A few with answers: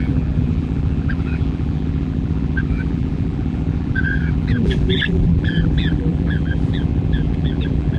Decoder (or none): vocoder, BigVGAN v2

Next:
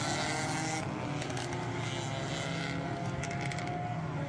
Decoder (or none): none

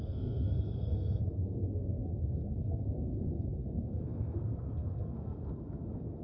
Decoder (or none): codec, SNAC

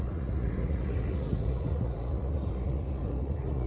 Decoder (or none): vocoder, Vocos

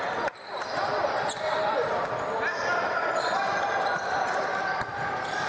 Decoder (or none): none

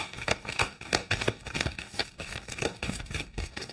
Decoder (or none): codec, DAC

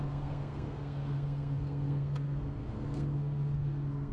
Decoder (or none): codec, SNAC